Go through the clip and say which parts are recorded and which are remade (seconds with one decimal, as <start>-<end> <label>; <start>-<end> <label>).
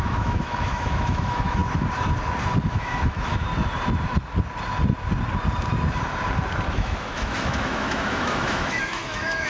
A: 0.0-1.6 remade; 1.6-2.6 recorded; 2.6-3.5 remade; 3.5-6.7 recorded; 6.7-9.5 remade